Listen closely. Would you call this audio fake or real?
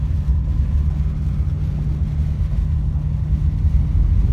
real